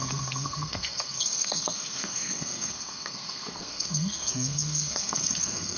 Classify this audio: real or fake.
fake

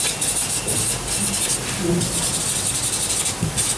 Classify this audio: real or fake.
real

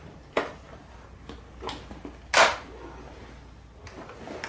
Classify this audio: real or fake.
real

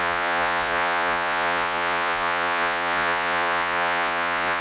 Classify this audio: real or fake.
fake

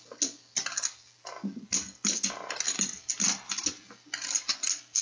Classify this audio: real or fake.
real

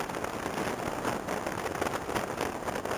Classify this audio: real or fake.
real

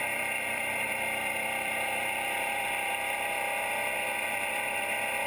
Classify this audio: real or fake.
fake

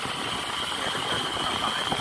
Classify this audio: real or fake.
real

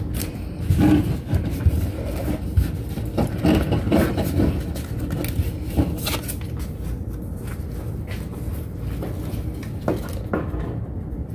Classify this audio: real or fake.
real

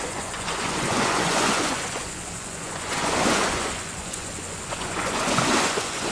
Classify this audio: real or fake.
fake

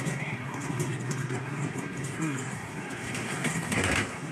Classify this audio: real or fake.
fake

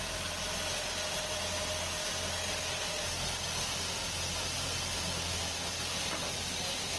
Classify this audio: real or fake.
real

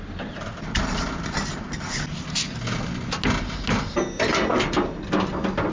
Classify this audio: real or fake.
real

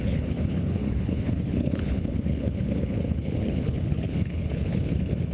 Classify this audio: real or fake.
fake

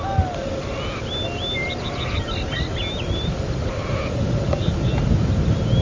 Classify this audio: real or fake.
real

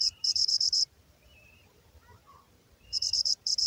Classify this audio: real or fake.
fake